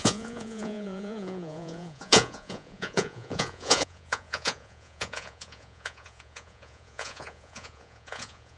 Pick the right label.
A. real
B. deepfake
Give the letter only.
B